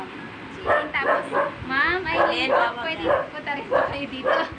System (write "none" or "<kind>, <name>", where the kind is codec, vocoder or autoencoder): none